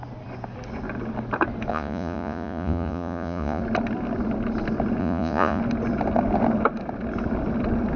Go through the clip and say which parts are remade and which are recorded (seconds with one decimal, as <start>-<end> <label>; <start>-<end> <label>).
0.0-1.7 recorded; 1.7-3.6 remade; 3.6-5.0 recorded; 5.0-5.6 remade; 5.6-8.0 recorded